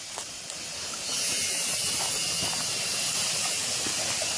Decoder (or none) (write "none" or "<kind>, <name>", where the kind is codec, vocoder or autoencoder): none